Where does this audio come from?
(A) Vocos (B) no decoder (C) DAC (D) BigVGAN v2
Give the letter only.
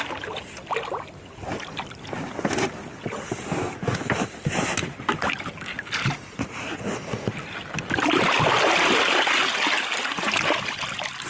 B